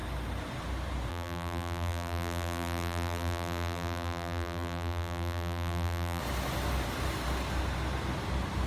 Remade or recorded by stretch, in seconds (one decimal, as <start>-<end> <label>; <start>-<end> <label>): 0.0-1.1 recorded; 1.1-6.2 remade; 6.2-8.7 recorded